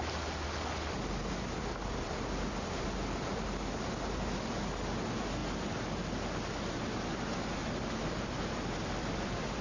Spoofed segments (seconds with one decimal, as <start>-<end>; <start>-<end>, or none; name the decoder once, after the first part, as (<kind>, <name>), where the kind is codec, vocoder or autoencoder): 7.6-9.6 (vocoder, BigVGAN v2)